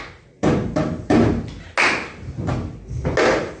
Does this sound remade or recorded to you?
recorded